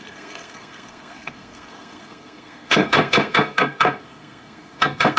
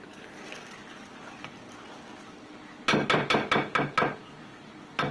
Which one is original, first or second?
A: second